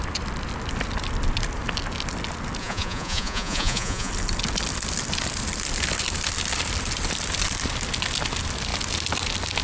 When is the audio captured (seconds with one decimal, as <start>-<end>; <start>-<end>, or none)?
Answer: 0.0-2.6; 4.1-9.6